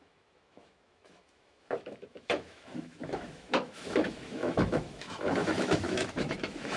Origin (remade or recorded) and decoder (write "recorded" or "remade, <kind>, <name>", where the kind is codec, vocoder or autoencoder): remade, autoencoder, DAC-VAE